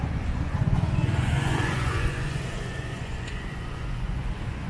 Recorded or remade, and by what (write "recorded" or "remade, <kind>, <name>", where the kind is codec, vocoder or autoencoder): remade, vocoder, Vocos